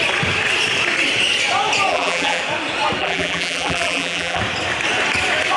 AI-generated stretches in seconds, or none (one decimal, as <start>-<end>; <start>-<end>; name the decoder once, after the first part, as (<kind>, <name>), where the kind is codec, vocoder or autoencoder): 1.9-2.4 (vocoder, BigVGAN v2); 3.0-4.4